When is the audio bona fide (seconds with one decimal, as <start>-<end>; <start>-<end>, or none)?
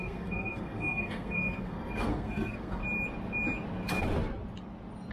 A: 2.8-5.1